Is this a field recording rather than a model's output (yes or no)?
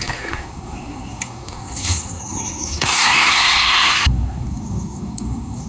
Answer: no